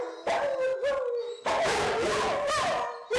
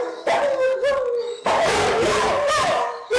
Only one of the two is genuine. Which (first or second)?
first